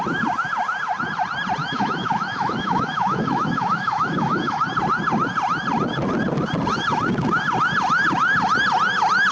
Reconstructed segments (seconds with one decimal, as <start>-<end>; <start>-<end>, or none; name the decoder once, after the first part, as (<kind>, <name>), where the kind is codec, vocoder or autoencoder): 1.6-4.6 (autoencoder, DAC-VAE)